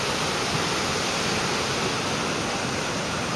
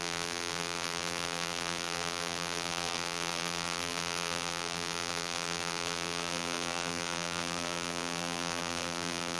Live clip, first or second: first